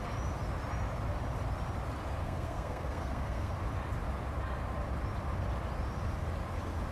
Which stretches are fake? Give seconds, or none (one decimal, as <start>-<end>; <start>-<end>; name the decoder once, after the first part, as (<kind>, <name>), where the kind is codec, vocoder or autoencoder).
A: 2.2-3.5 (codec, SNAC)